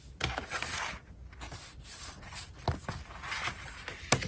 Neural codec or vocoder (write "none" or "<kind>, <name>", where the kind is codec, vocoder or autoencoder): none